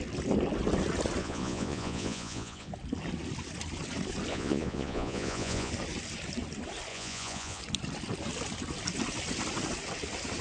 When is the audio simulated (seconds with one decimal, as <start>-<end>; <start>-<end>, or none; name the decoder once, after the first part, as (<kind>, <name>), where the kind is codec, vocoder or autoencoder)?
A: 1.2-2.7 (vocoder, Vocos); 4.3-5.7; 6.9-7.6